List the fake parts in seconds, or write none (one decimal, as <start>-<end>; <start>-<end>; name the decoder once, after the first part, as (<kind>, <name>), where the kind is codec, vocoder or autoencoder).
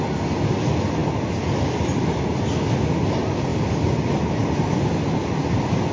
none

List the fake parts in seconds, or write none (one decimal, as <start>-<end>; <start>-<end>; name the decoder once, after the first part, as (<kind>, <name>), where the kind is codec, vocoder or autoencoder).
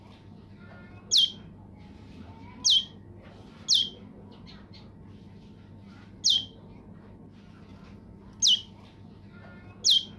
none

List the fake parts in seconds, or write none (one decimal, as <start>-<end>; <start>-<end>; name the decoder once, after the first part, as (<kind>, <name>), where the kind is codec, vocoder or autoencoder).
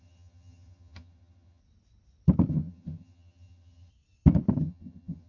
0.0-1.6 (vocoder, HiFi-GAN); 2.5-3.9; 4.6-5.3